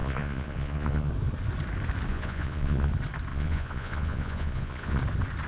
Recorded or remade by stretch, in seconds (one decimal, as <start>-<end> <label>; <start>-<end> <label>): 0.0-1.1 remade; 1.1-2.1 recorded; 2.1-2.9 remade; 2.9-3.3 recorded; 3.3-5.0 remade; 5.0-5.5 recorded